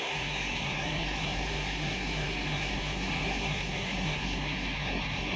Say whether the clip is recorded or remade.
remade